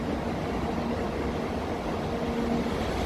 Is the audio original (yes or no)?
yes